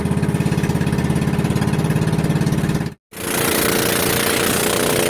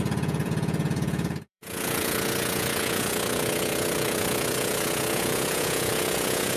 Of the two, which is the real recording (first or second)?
first